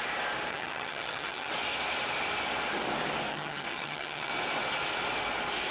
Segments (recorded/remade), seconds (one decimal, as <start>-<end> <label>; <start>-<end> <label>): 0.0-0.5 recorded; 0.5-1.5 remade; 1.5-3.3 recorded; 3.3-4.3 remade; 4.3-5.7 recorded